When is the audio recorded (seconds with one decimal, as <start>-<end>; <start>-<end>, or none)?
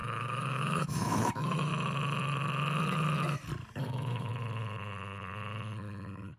1.7-3.8; 4.3-6.4